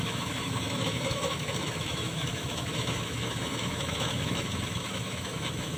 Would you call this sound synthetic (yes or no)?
yes